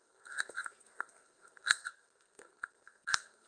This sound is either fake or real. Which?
fake